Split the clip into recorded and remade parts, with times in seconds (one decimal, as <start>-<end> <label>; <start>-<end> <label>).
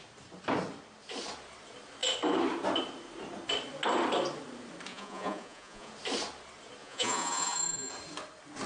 0.0-4.9 recorded; 4.9-5.9 remade; 5.9-6.8 recorded; 6.8-7.9 remade; 7.9-8.7 recorded